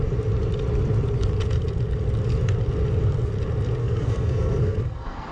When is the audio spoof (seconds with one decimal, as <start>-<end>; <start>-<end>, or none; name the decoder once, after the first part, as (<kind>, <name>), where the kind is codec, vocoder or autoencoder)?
3.8-5.3 (codec, SNAC)